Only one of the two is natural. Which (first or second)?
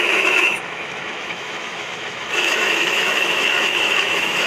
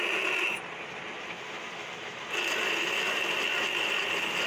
second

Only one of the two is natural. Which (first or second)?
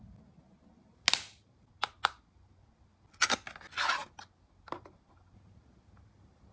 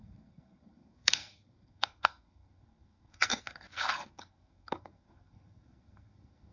first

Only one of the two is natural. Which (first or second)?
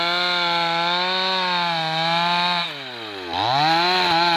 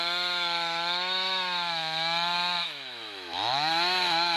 first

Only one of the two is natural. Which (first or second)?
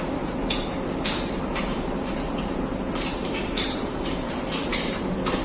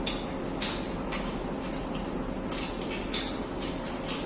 second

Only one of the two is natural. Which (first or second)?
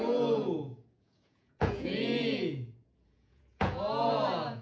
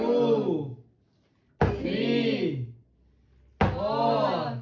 second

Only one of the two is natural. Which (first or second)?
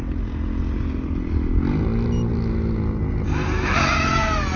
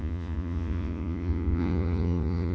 first